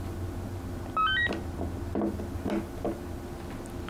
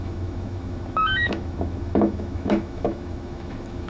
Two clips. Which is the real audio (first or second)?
first